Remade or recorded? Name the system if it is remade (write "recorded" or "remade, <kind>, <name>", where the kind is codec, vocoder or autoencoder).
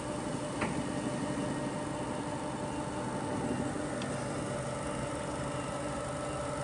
recorded